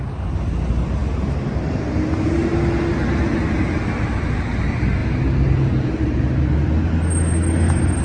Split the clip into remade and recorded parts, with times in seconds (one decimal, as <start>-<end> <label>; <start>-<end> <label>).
0.0-8.0 recorded